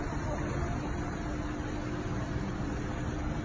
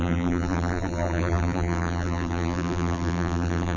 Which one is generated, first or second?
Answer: second